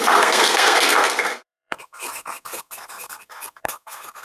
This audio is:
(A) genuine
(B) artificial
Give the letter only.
B